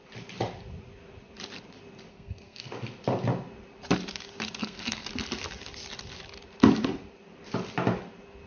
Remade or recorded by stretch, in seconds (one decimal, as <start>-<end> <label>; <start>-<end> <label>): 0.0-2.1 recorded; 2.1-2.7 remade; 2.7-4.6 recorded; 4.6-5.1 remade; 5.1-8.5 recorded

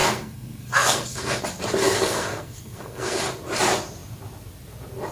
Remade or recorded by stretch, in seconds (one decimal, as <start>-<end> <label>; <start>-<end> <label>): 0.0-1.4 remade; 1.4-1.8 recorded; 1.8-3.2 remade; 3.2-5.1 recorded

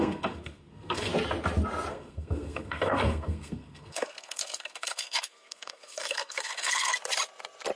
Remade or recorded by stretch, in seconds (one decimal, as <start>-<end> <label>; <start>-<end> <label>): 0.0-1.1 remade; 1.1-1.9 recorded; 1.9-6.9 remade; 6.9-7.8 recorded

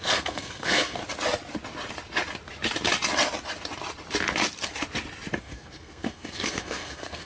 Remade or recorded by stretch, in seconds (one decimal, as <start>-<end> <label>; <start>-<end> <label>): 0.0-1.0 remade; 1.0-5.4 recorded; 5.4-7.3 remade

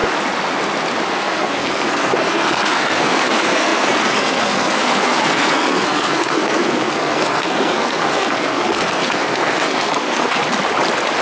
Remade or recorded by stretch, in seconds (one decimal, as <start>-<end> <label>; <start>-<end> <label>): 0.0-1.1 recorded; 1.1-10.4 remade; 10.4-11.2 recorded